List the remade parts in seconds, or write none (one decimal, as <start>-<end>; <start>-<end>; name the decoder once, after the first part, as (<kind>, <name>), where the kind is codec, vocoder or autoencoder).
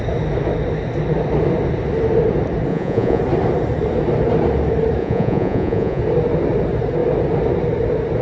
2.7-3.2 (vocoder, Vocos); 5.0-6.0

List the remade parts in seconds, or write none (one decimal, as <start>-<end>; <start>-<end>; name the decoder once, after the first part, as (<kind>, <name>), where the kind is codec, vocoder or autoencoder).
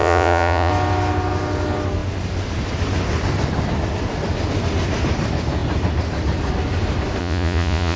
0.0-0.7 (vocoder, Vocos); 7.2-8.0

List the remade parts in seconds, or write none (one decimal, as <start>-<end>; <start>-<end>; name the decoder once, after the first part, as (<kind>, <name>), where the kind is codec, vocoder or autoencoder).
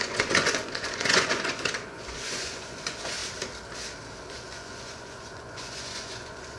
0.0-3.2 (vocoder, Vocos); 4.3-6.6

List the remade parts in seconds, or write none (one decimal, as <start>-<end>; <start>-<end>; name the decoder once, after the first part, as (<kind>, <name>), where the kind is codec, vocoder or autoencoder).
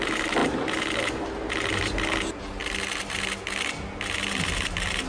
none